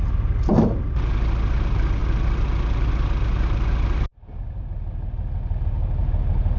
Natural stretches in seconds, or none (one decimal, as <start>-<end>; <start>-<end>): 0.0-6.6